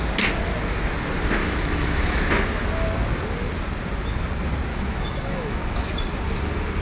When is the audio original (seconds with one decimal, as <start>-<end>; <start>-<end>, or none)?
0.0-1.4; 2.2-4.7; 5.9-6.8